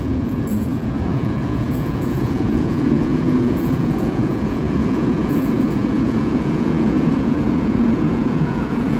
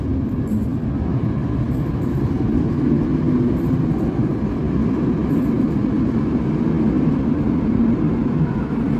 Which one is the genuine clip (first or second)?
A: second